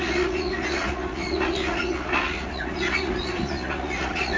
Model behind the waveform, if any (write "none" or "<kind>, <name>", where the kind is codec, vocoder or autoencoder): vocoder, Vocos